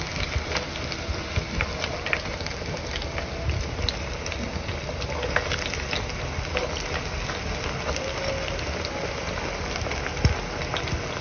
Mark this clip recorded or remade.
recorded